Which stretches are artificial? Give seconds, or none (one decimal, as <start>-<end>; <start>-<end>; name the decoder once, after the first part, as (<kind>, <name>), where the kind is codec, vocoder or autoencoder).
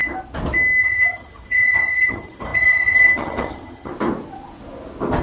0.8-3.9 (vocoder, HiFi-GAN)